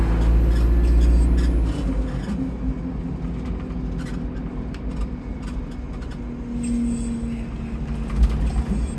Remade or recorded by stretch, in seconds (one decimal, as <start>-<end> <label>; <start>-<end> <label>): 0.0-4.1 recorded; 4.1-5.6 remade; 5.6-9.0 recorded